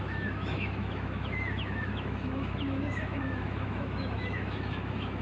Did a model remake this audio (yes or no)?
yes